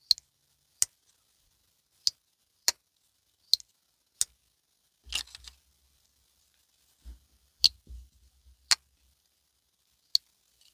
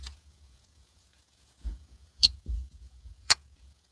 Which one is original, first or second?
first